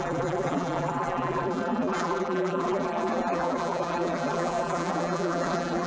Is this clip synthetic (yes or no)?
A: yes